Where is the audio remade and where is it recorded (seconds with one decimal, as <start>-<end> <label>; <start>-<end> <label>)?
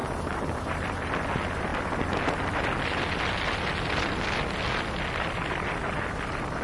0.0-6.6 recorded